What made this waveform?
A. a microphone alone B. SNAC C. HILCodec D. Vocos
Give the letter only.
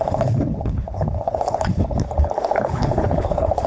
C